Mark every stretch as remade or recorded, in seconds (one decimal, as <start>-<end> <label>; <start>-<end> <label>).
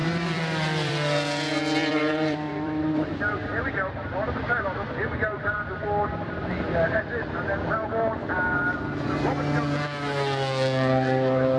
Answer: 0.0-0.9 remade; 0.9-1.8 recorded; 1.8-3.7 remade; 3.7-11.6 recorded